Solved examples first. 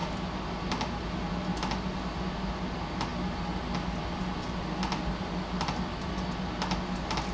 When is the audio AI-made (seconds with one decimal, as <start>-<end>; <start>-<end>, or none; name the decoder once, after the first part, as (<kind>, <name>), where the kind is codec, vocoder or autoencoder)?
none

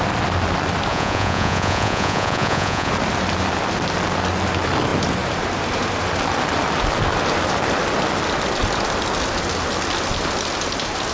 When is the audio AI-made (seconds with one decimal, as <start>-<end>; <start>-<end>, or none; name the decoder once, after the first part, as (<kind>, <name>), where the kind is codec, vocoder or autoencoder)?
0.9-2.9 (vocoder, Vocos)

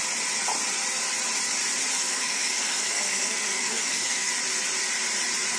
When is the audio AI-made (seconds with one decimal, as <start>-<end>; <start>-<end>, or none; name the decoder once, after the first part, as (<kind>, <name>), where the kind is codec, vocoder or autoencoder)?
2.0-4.3 (codec, SNAC)

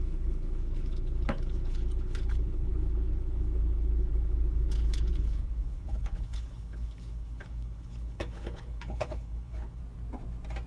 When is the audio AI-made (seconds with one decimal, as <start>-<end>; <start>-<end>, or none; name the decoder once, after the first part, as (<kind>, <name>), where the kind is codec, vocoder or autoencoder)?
0.0-9.8 (codec, HILCodec)

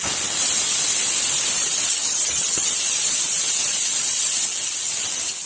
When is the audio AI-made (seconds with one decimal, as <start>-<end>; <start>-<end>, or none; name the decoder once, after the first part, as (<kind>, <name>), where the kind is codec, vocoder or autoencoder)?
1.9-2.7 (vocoder, HiFi-GAN)